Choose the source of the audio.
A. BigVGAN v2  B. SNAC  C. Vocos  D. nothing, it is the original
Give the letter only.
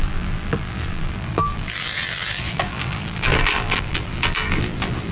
A